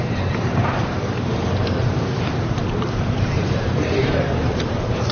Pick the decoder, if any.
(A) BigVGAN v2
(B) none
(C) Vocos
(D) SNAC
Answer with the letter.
A